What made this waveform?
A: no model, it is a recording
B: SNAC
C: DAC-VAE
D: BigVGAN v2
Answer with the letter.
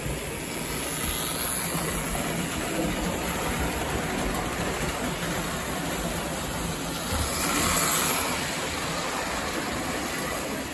A